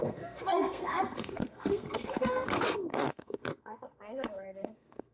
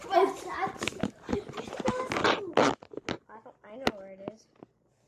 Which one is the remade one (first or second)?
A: first